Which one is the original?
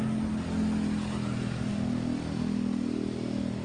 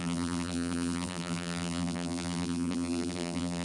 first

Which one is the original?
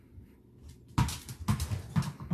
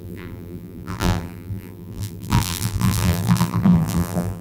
first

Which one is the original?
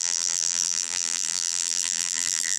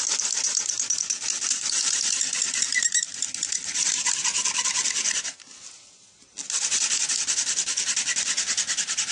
second